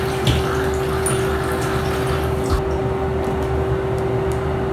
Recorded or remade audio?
recorded